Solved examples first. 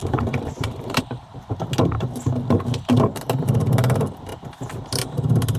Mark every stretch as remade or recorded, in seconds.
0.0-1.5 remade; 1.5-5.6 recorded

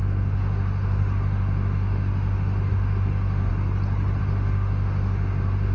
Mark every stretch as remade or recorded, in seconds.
0.0-3.5 remade; 3.5-4.2 recorded; 4.2-5.7 remade